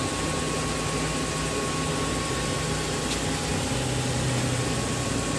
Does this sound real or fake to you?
real